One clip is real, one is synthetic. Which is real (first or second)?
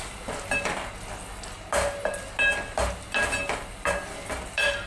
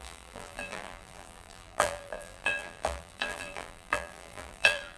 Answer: first